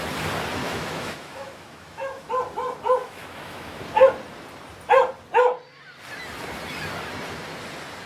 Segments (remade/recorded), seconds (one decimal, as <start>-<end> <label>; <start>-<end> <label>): 0.0-0.6 recorded; 0.6-2.3 remade; 2.3-3.0 recorded; 3.0-3.8 remade; 3.8-8.1 recorded